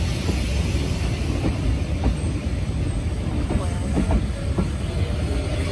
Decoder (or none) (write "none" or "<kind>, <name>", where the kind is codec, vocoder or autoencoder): none